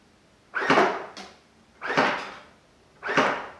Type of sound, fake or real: real